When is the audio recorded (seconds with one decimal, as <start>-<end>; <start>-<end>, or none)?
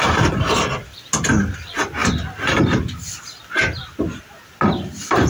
0.0-5.3